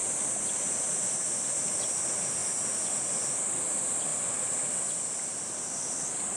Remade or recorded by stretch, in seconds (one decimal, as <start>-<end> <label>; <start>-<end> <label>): 0.0-6.4 recorded